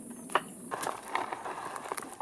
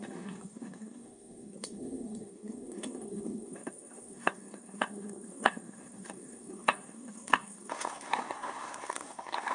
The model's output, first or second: second